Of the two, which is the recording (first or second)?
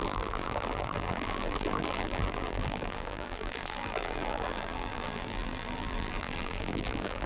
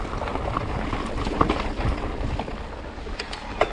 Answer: second